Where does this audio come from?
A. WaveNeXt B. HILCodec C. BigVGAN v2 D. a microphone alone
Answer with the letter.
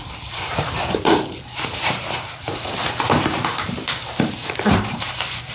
C